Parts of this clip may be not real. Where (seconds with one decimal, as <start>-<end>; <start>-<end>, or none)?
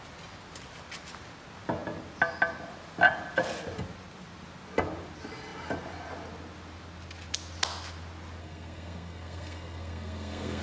8.4-10.6